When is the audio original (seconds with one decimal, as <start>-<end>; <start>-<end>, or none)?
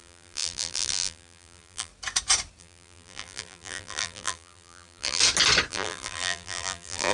1.9-2.6; 5.2-5.7